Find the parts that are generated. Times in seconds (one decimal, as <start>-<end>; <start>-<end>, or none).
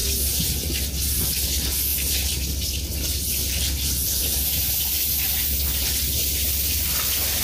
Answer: none